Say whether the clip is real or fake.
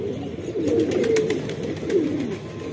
real